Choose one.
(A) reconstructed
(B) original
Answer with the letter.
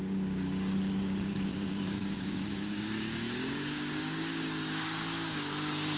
A